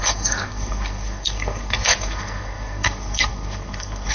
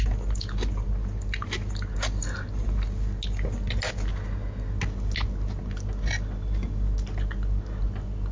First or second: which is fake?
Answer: first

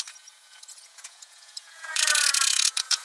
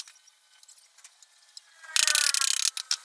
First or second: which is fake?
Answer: first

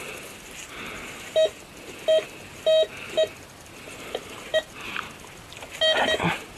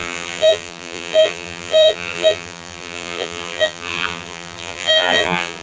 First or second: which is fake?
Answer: second